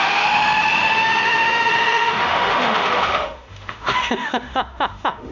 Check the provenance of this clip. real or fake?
fake